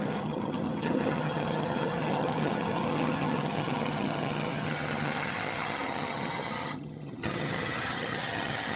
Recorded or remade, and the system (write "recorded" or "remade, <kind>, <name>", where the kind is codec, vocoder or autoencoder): remade, vocoder, HiFi-GAN